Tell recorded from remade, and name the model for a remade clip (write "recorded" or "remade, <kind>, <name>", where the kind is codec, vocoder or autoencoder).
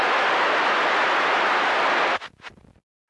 recorded